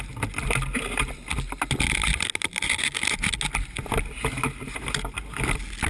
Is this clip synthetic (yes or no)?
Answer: no